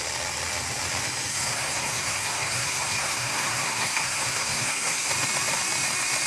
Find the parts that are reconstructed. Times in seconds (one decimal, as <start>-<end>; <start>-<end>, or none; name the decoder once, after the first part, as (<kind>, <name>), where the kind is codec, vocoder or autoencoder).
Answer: 1.3-5.1 (codec, SNAC)